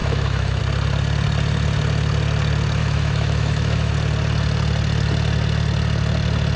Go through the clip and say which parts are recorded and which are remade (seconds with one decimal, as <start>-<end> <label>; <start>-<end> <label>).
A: 0.0-0.6 remade; 0.6-2.8 recorded; 2.8-3.9 remade; 3.9-6.6 recorded